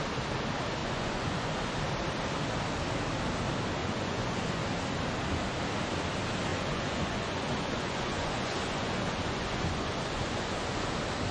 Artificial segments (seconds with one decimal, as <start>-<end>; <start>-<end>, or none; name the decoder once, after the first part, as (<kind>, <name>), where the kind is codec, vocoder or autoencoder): 0.8-1.6 (vocoder, Vocos); 3.8-4.6; 6.5-10.9